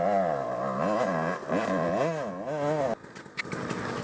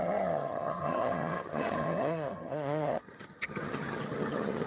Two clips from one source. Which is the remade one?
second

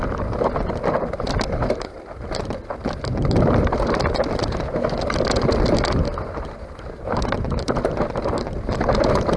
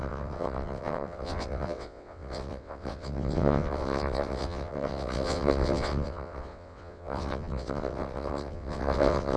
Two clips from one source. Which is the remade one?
second